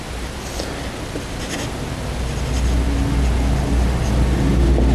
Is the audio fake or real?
real